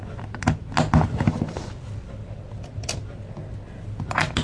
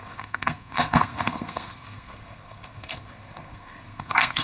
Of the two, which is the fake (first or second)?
second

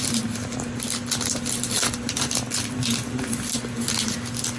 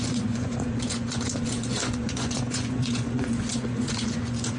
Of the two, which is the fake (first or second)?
second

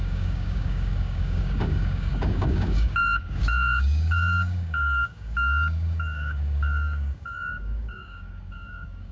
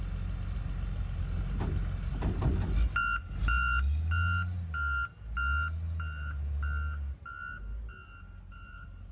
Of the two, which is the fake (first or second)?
first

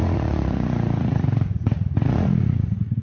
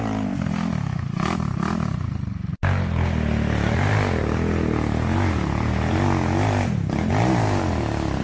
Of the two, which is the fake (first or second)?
first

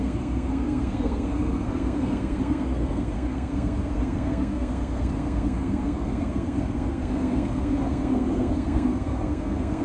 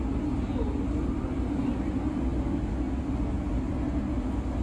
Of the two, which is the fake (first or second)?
first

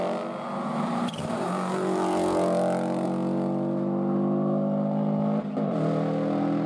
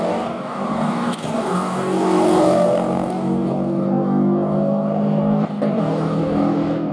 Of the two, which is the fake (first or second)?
second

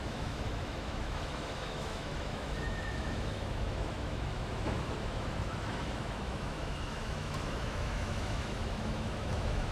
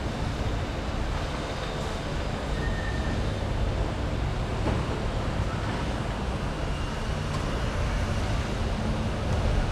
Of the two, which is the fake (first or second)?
first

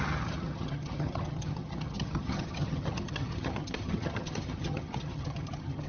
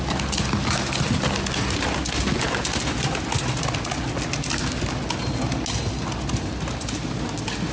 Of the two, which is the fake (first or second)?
first